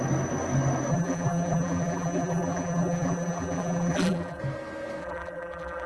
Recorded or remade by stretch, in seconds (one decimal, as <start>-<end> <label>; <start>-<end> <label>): 0.0-0.9 recorded; 0.9-4.4 remade; 4.4-5.0 recorded; 5.0-5.9 remade